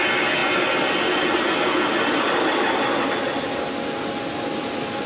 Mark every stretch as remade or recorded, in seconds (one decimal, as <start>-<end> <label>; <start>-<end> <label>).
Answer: 0.0-5.1 recorded